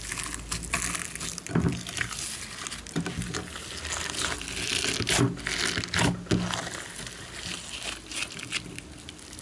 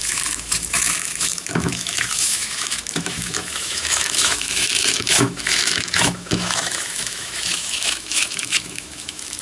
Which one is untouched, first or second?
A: first